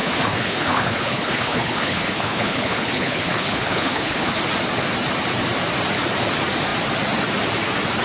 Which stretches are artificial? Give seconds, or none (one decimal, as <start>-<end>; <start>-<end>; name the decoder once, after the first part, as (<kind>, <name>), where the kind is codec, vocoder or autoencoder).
0.0-4.4 (codec, HILCodec)